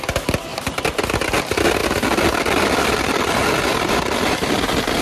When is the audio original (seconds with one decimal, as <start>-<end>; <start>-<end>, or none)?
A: 0.0-0.5; 1.4-1.8